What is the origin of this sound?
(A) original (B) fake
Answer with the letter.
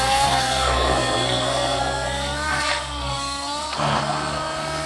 B